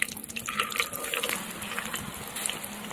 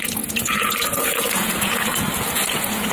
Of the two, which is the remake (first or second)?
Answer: second